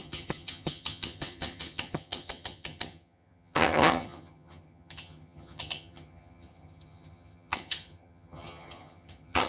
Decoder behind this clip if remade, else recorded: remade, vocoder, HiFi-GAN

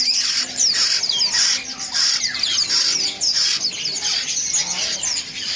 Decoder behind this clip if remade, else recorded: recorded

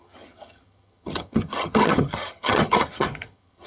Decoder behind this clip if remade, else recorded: remade, vocoder, HiFi-GAN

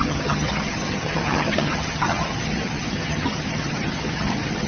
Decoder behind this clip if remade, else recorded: remade, vocoder, HiFi-GAN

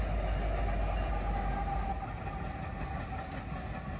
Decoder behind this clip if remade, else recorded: recorded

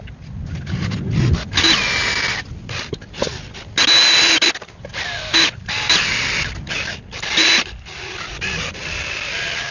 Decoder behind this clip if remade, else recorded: recorded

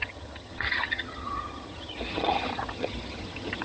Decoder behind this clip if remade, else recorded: remade, vocoder, HiFi-GAN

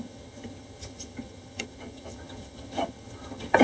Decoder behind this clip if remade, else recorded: remade, vocoder, HiFi-GAN